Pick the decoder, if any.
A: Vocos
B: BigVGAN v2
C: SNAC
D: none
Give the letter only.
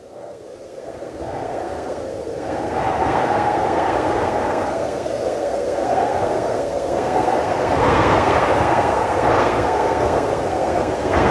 C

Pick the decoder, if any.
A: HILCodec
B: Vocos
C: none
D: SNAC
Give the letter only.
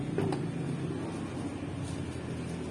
C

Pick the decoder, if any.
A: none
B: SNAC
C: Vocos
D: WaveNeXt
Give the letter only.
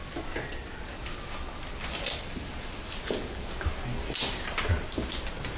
A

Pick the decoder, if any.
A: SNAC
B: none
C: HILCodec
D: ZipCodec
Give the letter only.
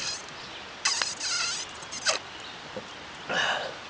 B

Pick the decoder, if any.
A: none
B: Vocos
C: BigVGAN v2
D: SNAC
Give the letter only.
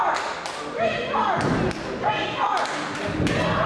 A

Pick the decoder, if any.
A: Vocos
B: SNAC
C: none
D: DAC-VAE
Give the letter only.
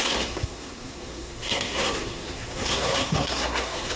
B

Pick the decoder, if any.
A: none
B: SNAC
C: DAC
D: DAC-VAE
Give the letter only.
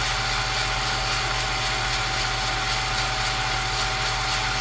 A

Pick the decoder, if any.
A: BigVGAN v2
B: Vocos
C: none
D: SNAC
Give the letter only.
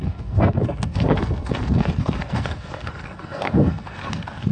D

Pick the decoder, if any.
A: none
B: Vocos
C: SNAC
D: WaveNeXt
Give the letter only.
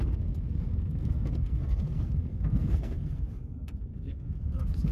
C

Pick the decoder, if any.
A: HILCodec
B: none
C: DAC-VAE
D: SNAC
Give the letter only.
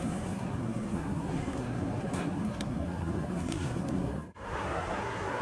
D